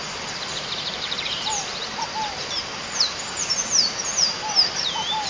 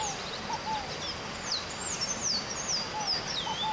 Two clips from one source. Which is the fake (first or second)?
first